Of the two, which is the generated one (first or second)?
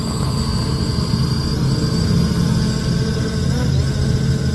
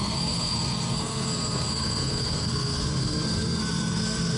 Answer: second